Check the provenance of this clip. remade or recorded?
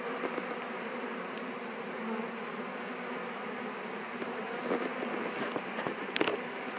recorded